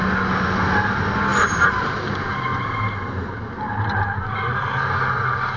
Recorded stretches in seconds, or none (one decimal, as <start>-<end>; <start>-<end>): 0.0-1.3; 2.0-2.5; 3.3-5.6